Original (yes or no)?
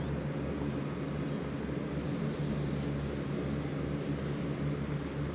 yes